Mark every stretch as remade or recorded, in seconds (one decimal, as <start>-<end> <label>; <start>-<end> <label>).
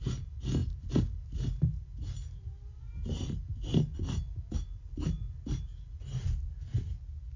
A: 0.0-7.4 recorded